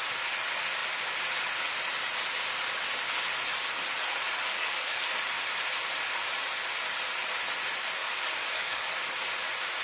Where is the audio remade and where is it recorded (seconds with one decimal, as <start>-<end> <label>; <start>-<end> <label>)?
0.0-4.5 recorded; 4.5-5.0 remade; 5.0-8.0 recorded; 8.0-8.9 remade; 8.9-9.8 recorded

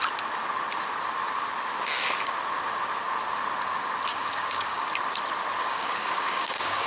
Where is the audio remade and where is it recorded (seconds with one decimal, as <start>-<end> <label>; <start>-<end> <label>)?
0.0-4.1 recorded; 4.1-4.9 remade; 4.9-5.6 recorded; 5.6-6.9 remade